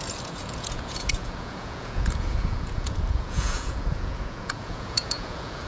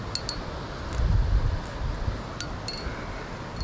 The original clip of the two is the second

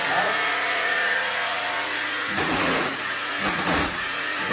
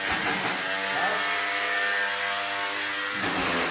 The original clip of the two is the second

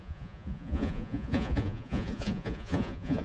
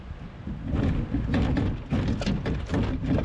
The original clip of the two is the second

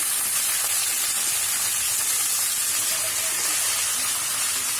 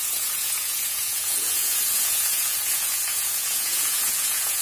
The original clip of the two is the first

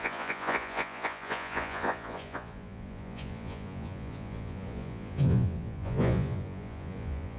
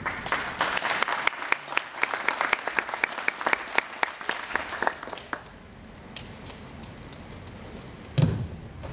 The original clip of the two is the second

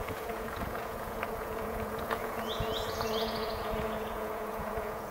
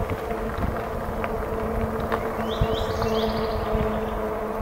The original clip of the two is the second